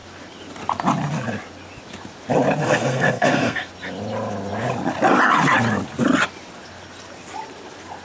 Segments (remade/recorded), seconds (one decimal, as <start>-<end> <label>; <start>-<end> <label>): 0.0-2.6 recorded; 2.6-3.7 remade; 3.7-8.0 recorded